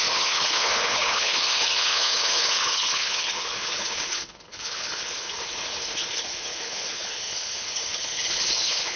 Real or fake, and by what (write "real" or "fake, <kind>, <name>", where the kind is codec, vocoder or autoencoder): fake, codec, HILCodec